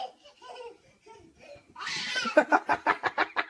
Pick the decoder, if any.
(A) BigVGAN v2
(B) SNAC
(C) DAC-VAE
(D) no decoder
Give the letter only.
D